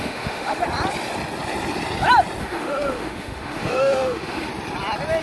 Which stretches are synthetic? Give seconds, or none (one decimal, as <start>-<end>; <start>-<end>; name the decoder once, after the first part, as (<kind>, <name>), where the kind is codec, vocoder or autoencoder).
0.0-0.6 (autoencoder, DAC-VAE); 2.4-4.5